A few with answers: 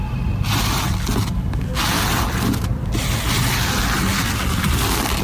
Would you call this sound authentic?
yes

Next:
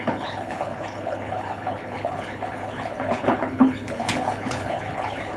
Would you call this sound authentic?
no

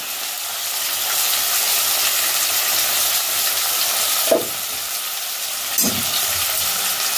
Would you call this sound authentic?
yes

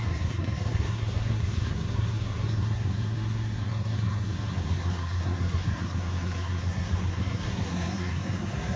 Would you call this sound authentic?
no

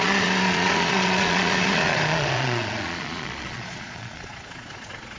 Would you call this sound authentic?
no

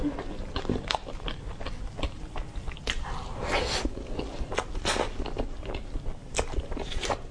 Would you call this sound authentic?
yes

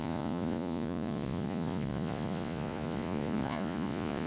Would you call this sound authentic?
no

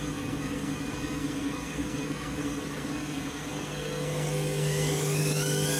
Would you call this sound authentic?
no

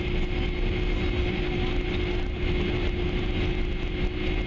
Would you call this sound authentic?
yes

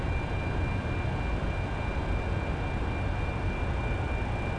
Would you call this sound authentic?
yes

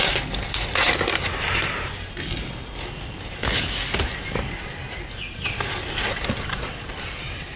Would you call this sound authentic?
yes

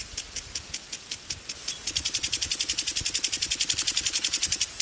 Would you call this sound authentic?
yes